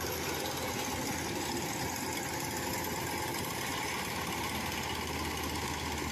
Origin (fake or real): real